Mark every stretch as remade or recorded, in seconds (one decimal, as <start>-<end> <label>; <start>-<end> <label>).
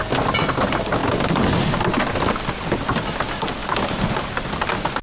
0.0-5.0 recorded